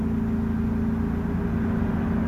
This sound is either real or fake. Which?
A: real